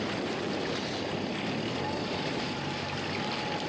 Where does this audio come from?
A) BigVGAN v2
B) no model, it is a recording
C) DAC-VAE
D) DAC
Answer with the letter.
B